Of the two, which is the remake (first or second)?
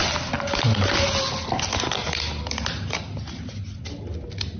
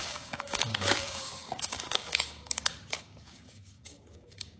second